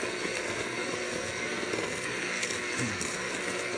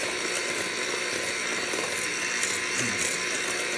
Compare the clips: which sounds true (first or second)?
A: second